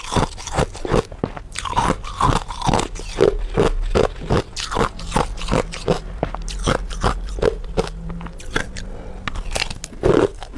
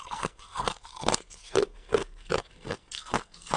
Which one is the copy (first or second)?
second